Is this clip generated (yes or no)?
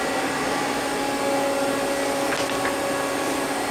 no